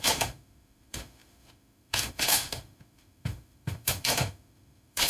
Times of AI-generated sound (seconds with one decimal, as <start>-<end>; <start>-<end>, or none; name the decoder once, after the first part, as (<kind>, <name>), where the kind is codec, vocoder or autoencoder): 0.0-5.1 (autoencoder, DAC-VAE)